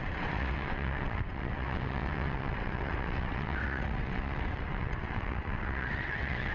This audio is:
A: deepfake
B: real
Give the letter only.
A